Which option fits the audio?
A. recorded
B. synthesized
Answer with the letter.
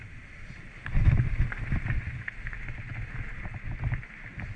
A